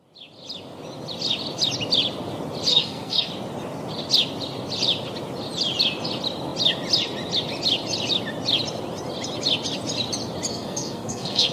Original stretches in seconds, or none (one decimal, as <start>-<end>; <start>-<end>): 0.0-2.7; 3.3-10.5